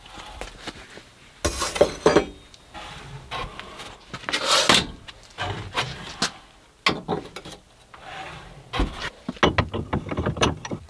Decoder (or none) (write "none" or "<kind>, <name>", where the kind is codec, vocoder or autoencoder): none